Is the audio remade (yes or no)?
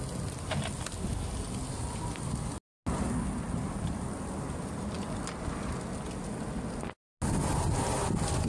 no